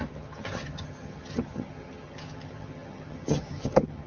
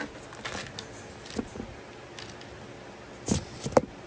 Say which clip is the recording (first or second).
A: second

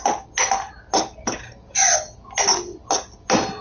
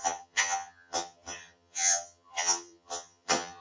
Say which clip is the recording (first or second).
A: first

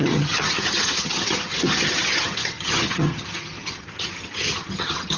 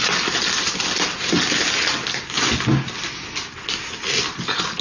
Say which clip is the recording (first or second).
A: second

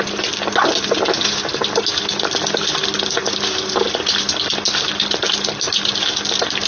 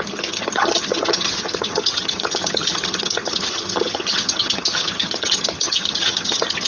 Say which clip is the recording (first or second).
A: first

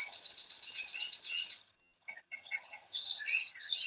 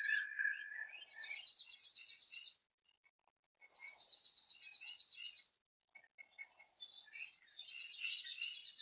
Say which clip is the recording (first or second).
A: second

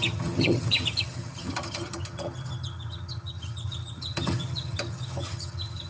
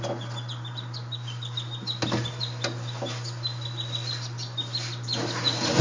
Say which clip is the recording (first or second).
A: second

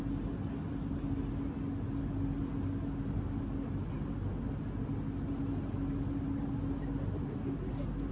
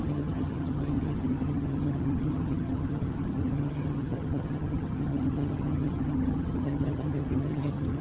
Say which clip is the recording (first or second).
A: first